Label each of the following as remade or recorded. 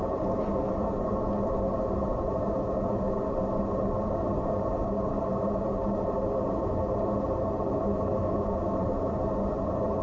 remade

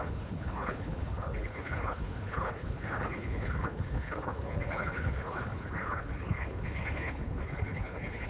remade